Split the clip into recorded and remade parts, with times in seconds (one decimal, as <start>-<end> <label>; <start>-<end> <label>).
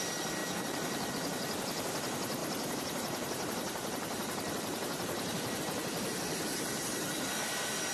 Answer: 0.0-2.4 recorded; 2.4-5.6 remade; 5.6-7.9 recorded